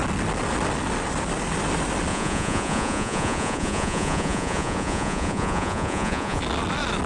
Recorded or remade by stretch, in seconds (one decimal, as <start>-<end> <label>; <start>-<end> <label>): 0.0-2.1 recorded; 2.1-6.4 remade; 6.4-7.1 recorded